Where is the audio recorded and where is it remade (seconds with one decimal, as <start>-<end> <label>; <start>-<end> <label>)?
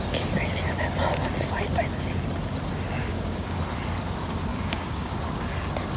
0.0-3.0 recorded; 3.0-3.6 remade; 3.6-4.5 recorded; 4.5-5.2 remade; 5.2-6.0 recorded